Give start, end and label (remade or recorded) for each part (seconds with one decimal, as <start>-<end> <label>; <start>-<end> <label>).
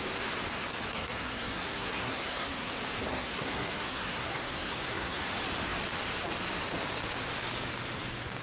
0.0-0.9 recorded; 0.9-2.7 remade; 2.7-3.1 recorded; 3.1-5.2 remade; 5.2-8.4 recorded